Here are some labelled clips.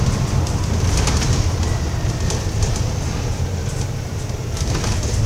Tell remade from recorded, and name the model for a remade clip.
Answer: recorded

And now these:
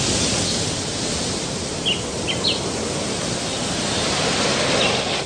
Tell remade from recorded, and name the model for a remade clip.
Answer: recorded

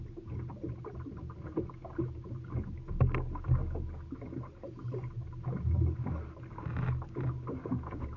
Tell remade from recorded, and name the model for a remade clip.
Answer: recorded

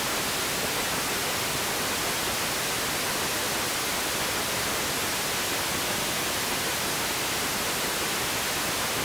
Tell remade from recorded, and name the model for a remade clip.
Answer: recorded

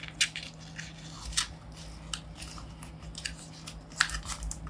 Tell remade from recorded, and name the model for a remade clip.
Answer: recorded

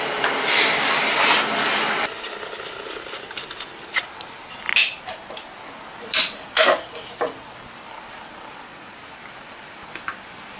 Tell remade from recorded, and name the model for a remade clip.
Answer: recorded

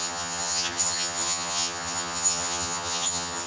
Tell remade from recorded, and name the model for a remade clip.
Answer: remade, vocoder, HiFi-GAN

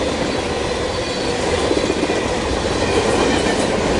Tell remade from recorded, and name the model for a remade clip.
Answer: recorded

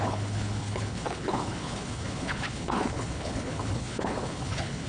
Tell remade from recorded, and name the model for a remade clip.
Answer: remade, codec, HILCodec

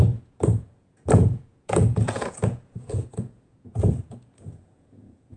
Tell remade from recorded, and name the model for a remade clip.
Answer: remade, vocoder, Vocos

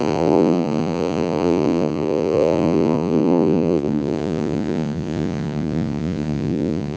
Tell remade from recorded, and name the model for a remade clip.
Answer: remade, vocoder, Vocos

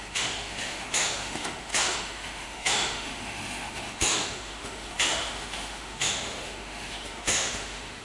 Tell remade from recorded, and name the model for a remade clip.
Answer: remade, autoencoder, DAC-VAE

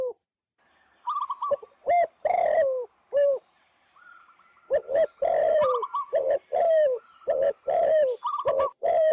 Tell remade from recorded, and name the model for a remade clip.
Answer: remade, vocoder, BigVGAN v2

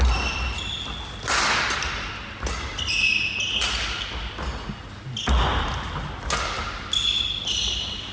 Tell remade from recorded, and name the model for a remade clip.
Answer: recorded